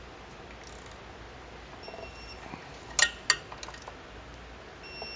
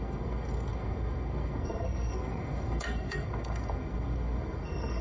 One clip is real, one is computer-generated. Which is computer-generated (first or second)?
second